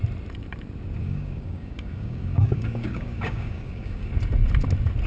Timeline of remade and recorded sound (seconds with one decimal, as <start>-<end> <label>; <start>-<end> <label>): 0.0-1.0 recorded; 1.0-4.1 remade; 4.1-5.1 recorded